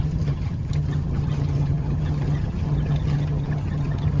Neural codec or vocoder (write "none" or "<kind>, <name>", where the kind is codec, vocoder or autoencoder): vocoder, HiFi-GAN